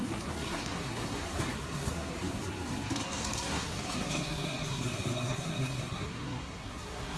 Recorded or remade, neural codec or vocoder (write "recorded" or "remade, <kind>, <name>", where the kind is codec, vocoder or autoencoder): remade, codec, SNAC